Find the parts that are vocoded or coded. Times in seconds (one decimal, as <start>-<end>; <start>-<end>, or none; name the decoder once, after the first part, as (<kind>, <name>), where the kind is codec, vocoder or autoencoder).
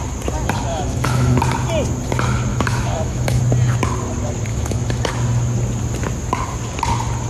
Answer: 0.7-1.4 (autoencoder, DAC-VAE); 2.5-3.4; 4.5-5.1